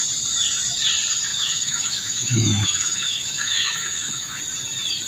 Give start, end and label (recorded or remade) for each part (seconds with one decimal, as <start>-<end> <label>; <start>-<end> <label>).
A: 0.0-1.3 recorded; 1.3-4.4 remade; 4.4-5.1 recorded

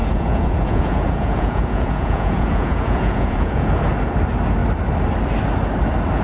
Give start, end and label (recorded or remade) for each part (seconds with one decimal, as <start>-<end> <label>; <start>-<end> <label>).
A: 0.0-3.7 remade; 3.7-6.2 recorded

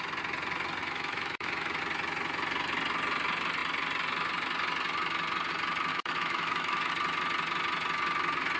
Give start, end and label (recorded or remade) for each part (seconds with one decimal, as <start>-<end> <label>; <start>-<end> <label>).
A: 0.0-0.8 recorded; 0.8-1.8 remade; 1.8-5.9 recorded; 5.9-6.9 remade; 6.9-8.6 recorded